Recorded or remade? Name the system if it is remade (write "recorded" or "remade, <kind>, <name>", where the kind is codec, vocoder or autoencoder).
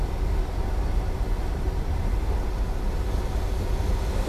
recorded